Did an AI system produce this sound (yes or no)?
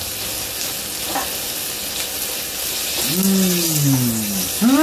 no